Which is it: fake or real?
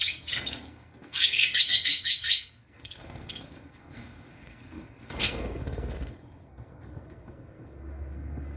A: fake